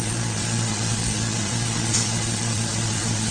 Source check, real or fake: fake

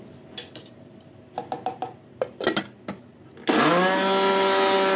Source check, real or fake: real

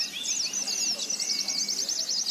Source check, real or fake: real